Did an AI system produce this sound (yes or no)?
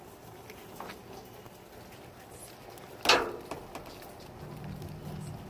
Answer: no